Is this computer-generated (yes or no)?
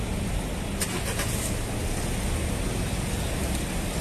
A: no